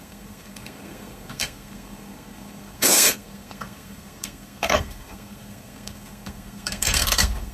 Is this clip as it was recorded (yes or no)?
no